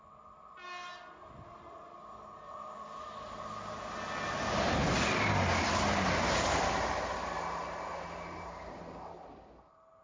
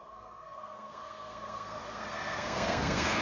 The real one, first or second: first